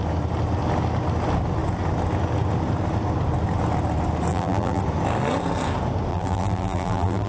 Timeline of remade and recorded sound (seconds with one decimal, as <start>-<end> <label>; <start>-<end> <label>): 0.0-4.3 recorded; 4.3-4.8 remade; 4.8-6.1 recorded; 6.1-7.3 remade